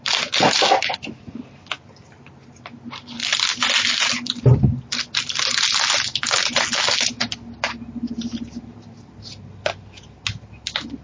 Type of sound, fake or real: real